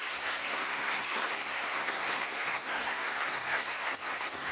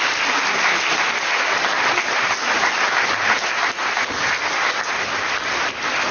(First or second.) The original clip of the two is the second